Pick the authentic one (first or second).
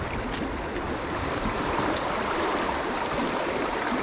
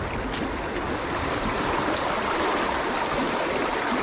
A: second